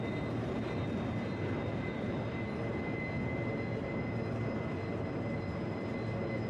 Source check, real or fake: real